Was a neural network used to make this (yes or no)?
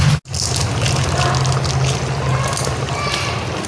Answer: no